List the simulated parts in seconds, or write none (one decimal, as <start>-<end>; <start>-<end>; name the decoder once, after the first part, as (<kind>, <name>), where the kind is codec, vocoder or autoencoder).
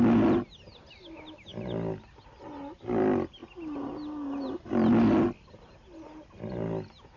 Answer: none